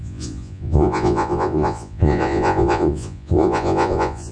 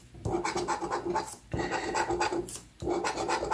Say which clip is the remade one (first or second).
first